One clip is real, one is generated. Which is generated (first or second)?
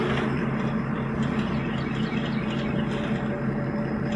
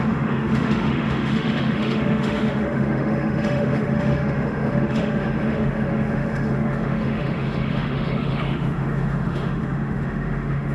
second